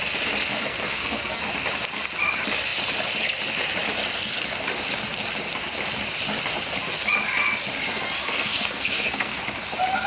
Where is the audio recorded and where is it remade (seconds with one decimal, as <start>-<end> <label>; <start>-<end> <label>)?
0.0-0.5 recorded; 0.5-1.4 remade; 1.4-8.2 recorded; 8.2-9.4 remade; 9.4-10.1 recorded